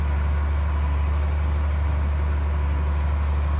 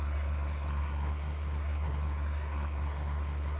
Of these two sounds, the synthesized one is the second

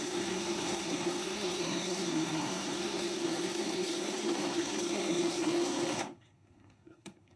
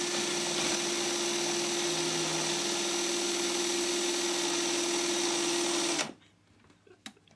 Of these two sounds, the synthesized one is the first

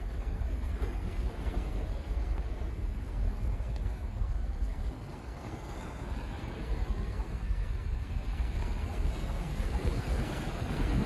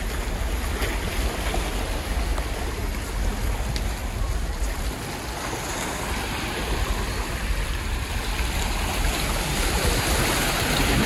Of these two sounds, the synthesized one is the first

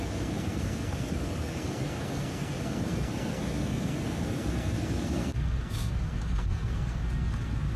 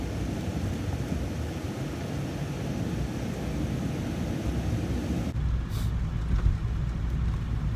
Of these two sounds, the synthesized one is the first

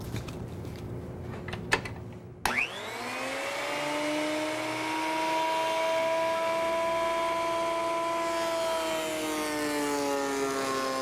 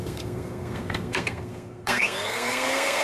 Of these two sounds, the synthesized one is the second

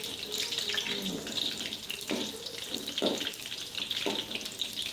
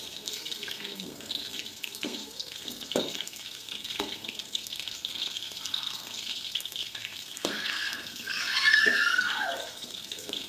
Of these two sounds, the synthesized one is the second